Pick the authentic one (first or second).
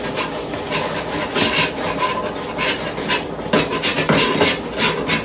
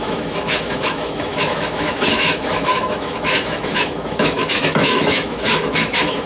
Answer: first